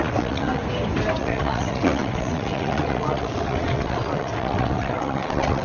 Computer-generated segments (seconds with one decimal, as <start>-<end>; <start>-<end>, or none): 0.0-0.6; 1.2-5.6

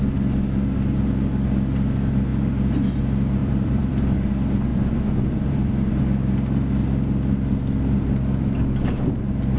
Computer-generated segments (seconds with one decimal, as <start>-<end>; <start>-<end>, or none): 3.4-4.3; 4.7-6.0

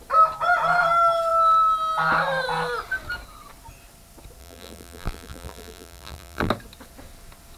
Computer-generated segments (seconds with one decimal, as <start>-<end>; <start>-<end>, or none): 4.4-6.5

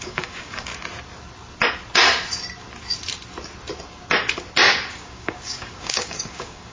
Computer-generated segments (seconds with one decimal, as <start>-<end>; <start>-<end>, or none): 0.0-0.7; 4.7-6.7